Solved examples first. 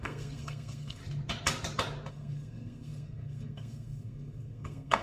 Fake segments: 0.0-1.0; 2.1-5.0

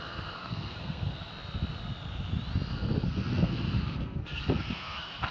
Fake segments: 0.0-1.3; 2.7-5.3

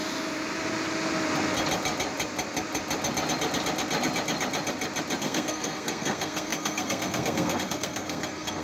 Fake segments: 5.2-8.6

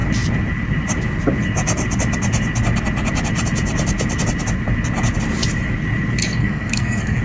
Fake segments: 6.4-7.2

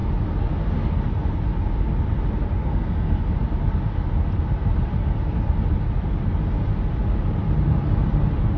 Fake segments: 2.6-3.2

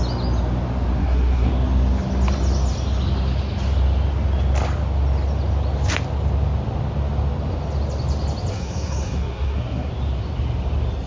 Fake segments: 1.0-1.5; 8.5-9.9